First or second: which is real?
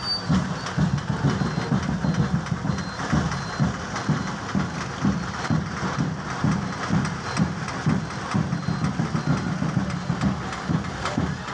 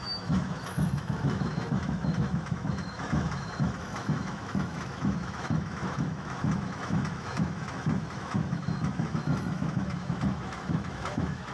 first